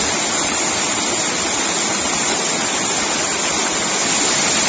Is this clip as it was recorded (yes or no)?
yes